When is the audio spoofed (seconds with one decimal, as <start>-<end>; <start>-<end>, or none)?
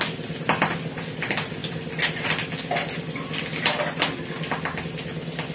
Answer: none